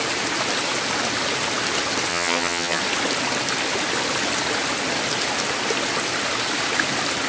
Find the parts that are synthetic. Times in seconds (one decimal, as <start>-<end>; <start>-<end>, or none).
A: 2.1-2.8